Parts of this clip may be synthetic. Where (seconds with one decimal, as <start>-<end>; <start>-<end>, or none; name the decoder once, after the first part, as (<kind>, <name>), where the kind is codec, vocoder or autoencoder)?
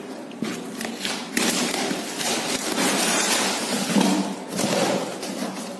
1.2-4.7 (vocoder, BigVGAN v2)